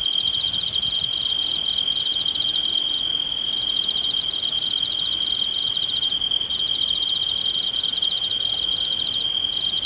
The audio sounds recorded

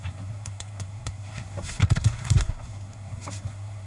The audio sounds remade